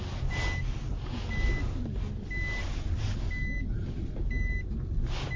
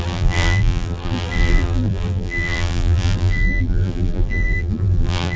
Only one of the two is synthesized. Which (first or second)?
second